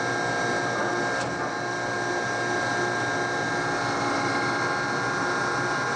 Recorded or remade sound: recorded